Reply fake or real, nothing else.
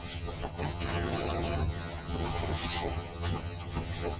fake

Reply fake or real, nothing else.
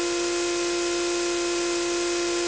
real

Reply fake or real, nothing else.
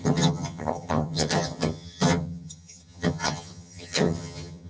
fake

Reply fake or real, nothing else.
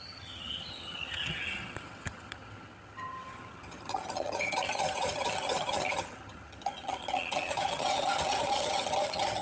fake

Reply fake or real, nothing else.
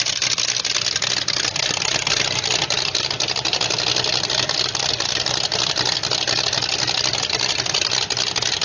real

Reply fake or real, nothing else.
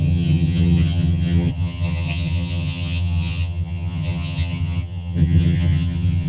fake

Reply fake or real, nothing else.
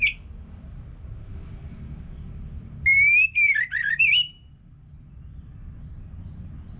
real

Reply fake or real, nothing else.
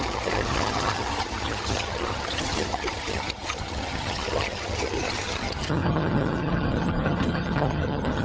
fake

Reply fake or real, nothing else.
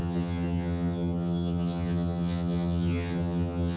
fake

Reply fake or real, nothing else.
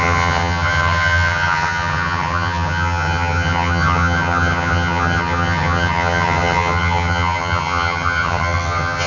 fake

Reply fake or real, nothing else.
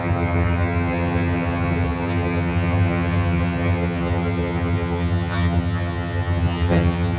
fake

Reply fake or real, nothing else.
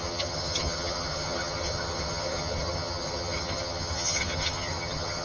fake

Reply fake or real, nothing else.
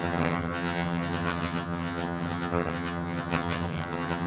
fake